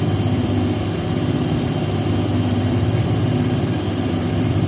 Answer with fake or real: fake